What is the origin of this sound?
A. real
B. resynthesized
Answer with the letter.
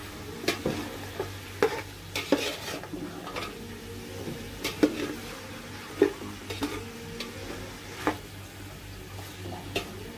A